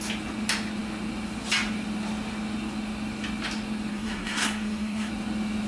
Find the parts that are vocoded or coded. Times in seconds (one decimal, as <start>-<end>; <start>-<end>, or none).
3.9-5.1